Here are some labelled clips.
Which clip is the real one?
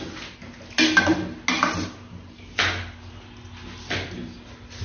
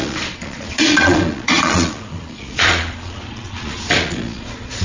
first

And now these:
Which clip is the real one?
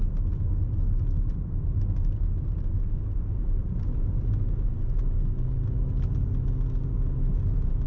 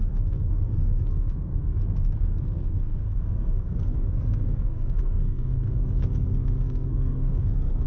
first